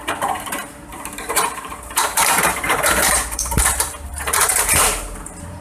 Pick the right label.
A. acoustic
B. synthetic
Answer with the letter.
B